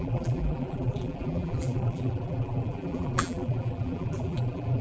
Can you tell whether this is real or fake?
fake